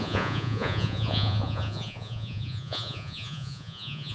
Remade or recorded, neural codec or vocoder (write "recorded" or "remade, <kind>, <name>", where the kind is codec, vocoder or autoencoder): remade, vocoder, Vocos